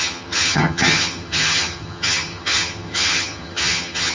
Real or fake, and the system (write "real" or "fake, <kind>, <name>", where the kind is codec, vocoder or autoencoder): fake, vocoder, HiFi-GAN